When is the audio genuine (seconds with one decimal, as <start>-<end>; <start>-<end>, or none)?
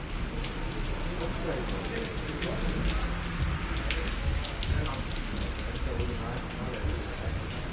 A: 0.0-7.7